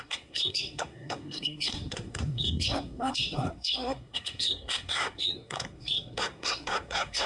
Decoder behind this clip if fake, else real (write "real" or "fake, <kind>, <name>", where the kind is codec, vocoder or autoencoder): fake, codec, SNAC